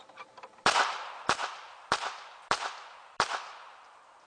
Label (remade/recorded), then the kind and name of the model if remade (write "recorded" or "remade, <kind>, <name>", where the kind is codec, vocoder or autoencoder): recorded